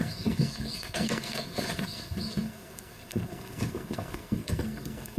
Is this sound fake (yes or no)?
yes